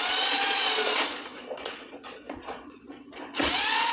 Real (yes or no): no